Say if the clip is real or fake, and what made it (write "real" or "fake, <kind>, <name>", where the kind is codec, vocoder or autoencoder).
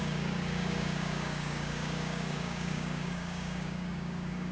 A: fake, codec, DAC